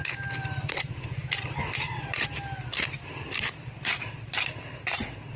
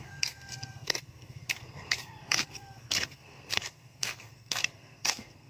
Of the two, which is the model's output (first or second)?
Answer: second